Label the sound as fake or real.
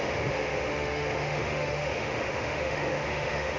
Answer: fake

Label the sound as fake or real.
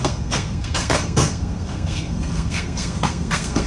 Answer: fake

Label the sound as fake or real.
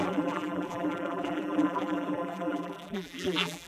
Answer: fake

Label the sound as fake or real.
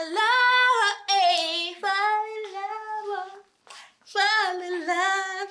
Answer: real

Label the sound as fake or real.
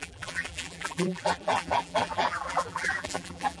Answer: fake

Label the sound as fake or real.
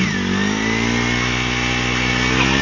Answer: real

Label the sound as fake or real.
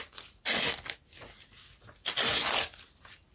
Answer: real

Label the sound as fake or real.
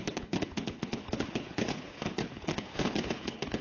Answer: fake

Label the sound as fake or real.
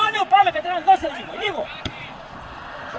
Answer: fake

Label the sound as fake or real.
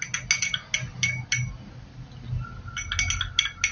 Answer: real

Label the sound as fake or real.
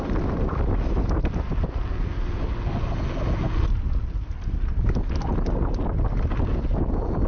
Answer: real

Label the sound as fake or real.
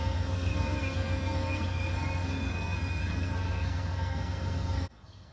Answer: fake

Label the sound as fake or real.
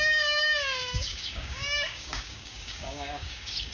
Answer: fake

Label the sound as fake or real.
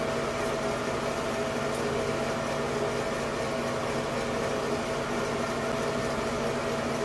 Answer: real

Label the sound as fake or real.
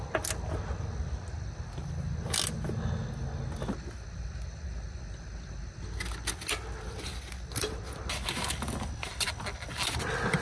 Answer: real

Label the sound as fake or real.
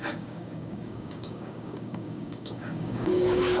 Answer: fake